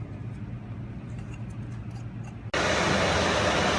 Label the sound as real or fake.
real